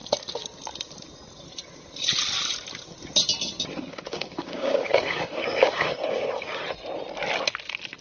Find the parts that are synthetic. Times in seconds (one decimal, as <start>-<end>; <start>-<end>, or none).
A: 3.9-6.6